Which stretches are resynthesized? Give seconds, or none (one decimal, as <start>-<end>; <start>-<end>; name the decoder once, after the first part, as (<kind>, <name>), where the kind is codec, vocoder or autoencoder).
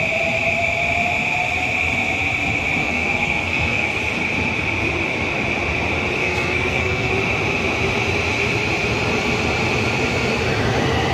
2.8-4.0 (codec, SNAC); 6.2-7.1